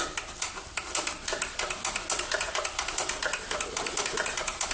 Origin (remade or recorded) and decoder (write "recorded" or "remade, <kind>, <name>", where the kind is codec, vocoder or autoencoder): recorded